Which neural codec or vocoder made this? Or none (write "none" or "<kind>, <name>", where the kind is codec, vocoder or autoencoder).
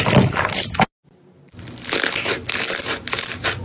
none